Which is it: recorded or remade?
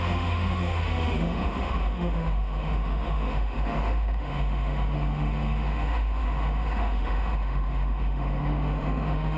remade